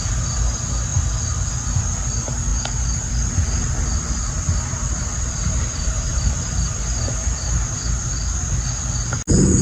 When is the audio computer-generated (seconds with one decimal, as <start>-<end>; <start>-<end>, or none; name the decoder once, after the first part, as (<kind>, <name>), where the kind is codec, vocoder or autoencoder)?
0.9-1.5 (vocoder, BigVGAN v2); 2.5-6.8